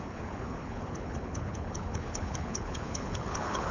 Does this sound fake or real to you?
fake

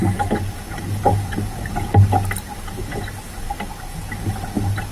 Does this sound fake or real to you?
real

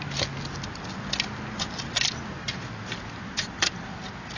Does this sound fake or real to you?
real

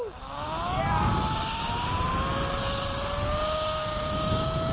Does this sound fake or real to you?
real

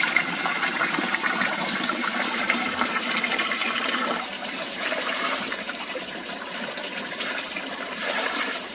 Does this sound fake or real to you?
fake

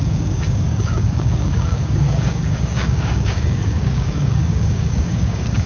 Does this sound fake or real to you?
fake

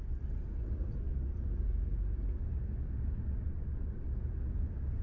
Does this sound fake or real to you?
real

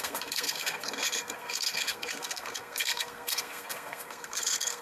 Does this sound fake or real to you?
fake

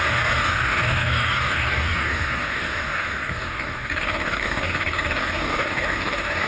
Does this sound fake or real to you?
fake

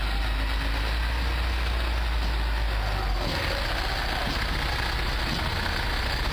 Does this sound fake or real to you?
real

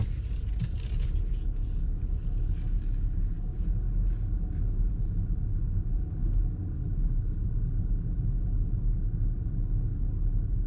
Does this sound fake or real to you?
real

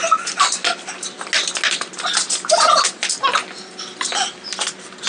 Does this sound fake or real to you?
real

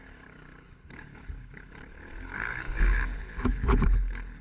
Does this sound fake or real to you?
fake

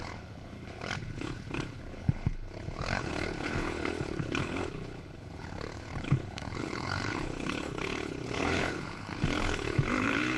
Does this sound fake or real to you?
fake